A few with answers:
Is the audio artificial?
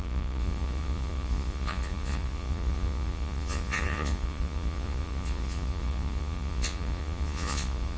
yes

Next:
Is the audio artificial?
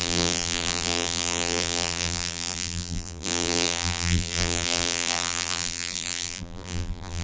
yes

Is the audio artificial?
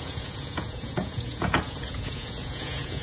yes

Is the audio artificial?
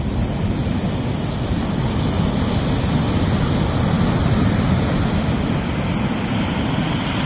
no